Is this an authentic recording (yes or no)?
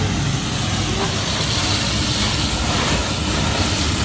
yes